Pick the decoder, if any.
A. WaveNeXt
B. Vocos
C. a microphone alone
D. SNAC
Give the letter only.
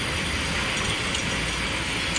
C